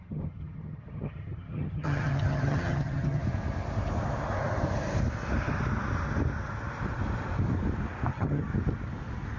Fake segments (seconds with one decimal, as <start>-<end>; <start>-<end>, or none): 0.0-3.2; 8.1-8.5